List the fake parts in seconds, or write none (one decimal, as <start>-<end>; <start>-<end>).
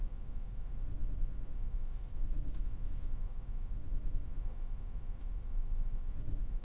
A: 0.0-6.6